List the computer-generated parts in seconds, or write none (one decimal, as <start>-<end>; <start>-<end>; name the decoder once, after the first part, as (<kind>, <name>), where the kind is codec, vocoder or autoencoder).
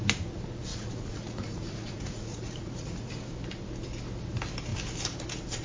0.7-3.1 (vocoder, Vocos)